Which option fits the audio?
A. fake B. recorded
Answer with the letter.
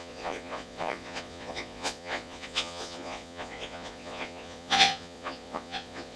A